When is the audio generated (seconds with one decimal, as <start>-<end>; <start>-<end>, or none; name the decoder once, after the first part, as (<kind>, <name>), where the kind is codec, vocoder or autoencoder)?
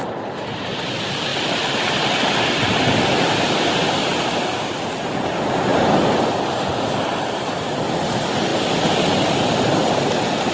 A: 1.3-1.9 (vocoder, BigVGAN v2); 5.7-6.6